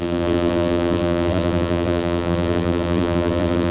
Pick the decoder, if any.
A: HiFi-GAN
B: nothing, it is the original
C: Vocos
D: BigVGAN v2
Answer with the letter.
D